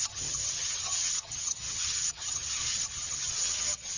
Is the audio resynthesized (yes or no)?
yes